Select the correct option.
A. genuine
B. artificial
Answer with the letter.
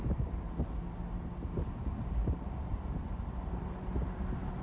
A